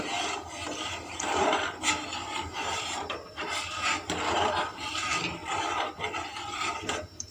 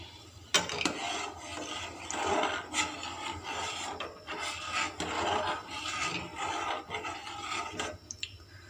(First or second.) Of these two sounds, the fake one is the first